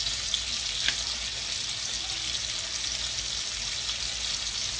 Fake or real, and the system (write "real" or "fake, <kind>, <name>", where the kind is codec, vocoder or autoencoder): real